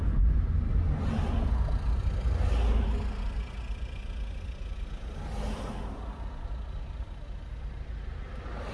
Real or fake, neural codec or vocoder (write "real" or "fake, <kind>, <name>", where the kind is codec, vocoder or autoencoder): real